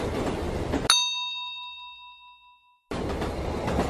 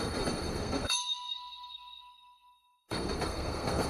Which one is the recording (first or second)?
first